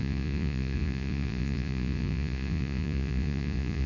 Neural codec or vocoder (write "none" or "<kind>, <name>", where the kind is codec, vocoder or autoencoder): vocoder, Vocos